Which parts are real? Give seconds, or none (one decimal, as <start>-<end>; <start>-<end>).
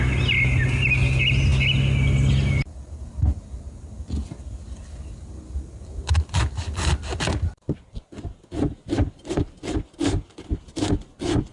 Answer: 0.0-11.5